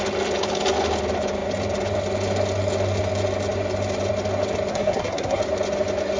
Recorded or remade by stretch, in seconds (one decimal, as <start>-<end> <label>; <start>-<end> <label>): 0.0-4.7 recorded; 4.7-5.4 remade; 5.4-6.2 recorded